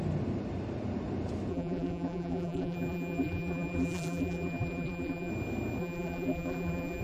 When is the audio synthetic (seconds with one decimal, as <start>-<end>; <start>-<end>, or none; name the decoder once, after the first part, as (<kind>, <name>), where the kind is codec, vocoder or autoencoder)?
1.5-5.3 (vocoder, BigVGAN v2); 5.8-7.0